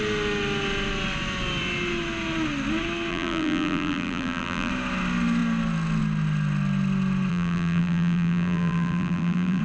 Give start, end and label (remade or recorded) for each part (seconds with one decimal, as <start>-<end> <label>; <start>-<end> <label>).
0.0-3.1 recorded; 3.1-4.7 remade; 4.7-7.3 recorded; 7.3-9.6 remade